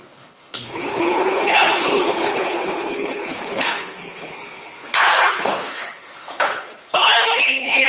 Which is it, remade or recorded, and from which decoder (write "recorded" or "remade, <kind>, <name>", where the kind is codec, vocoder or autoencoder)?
remade, codec, HILCodec